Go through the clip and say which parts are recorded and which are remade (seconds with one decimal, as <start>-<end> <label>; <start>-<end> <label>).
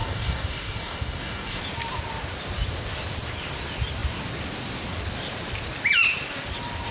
0.0-1.6 remade; 1.6-6.9 recorded